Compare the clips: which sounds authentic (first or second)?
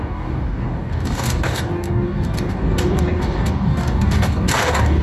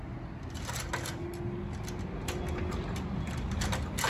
second